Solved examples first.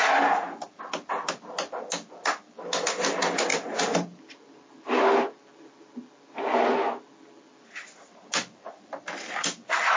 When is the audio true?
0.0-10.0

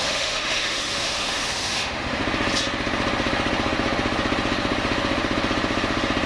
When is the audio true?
2.2-6.3

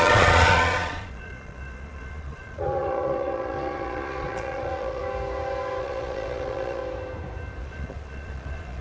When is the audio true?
5.0-5.8; 6.8-7.6

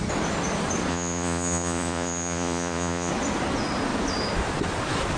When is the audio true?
0.0-0.9; 3.1-5.2